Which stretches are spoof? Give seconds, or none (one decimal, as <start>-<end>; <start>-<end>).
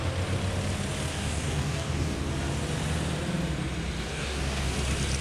1.1-2.2; 4.1-4.7